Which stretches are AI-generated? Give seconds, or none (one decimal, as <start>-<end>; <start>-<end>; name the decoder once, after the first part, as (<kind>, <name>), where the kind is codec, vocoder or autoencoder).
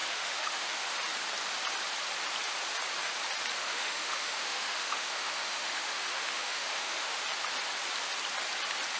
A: 0.0-0.9 (autoencoder, DAC-VAE); 3.6-7.2